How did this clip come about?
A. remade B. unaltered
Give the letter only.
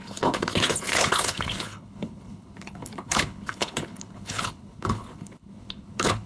A